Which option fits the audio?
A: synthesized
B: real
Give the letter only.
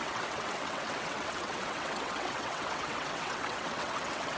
A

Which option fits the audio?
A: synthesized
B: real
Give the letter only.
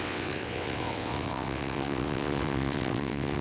A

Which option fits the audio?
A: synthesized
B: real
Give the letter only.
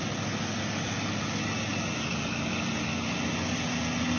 B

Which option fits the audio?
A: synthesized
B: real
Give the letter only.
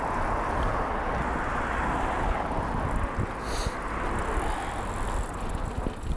B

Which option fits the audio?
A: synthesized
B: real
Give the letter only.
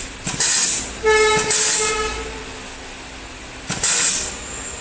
B